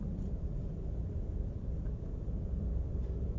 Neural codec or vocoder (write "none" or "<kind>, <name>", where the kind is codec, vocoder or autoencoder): none